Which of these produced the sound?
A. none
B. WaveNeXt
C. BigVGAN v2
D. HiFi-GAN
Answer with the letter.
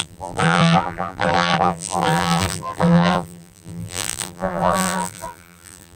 C